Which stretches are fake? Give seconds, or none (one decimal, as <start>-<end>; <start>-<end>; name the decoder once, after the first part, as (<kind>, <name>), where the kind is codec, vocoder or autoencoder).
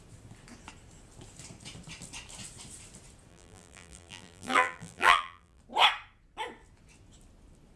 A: 3.3-5.6 (vocoder, BigVGAN v2)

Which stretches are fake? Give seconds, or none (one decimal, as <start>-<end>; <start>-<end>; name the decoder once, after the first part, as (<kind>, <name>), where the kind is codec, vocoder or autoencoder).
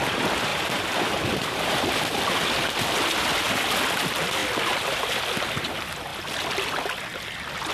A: 0.5-2.2 (vocoder, BigVGAN v2)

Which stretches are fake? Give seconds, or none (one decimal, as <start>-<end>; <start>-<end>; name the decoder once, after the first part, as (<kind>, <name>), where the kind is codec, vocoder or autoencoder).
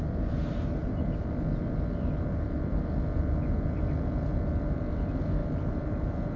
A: 0.4-1.2 (vocoder, BigVGAN v2)